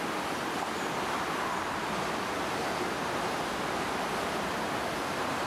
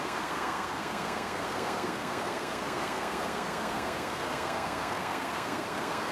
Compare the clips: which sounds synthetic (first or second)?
second